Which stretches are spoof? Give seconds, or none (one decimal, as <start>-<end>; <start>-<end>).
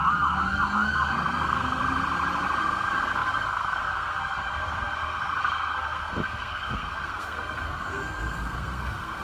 0.0-1.8; 2.6-9.2